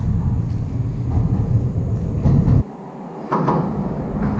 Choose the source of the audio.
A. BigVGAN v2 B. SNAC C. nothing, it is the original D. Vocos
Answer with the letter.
C